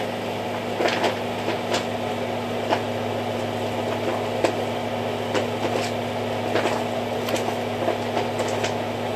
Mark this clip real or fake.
real